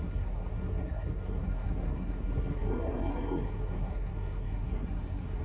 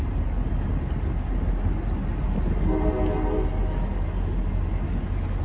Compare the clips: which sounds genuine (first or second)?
second